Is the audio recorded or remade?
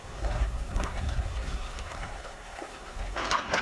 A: remade